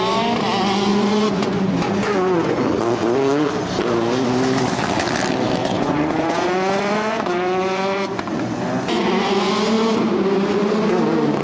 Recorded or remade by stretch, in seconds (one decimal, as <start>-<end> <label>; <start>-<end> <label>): 0.0-0.9 recorded; 0.9-2.6 remade; 2.6-5.6 recorded; 5.6-9.5 remade; 9.5-11.4 recorded